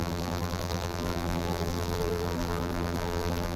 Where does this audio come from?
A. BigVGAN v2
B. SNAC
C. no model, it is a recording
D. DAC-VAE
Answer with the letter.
A